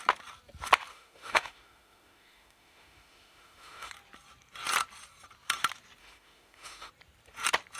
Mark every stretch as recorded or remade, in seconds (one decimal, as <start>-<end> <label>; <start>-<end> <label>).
0.0-0.9 recorded; 0.9-3.9 remade; 3.9-6.0 recorded; 6.0-6.9 remade; 6.9-7.8 recorded